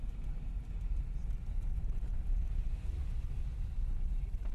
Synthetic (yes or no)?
yes